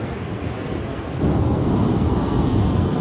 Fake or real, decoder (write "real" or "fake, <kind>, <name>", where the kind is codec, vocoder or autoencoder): fake, codec, SNAC